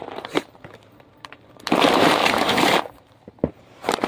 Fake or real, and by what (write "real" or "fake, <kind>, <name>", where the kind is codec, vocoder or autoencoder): fake, vocoder, BigVGAN v2